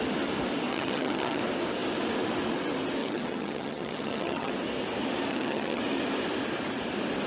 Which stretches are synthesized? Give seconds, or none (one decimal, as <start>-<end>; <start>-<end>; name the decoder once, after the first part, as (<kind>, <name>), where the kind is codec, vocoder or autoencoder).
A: 0.7-1.4 (vocoder, HiFi-GAN); 3.0-4.5; 5.3-5.8